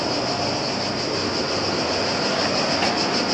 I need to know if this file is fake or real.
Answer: real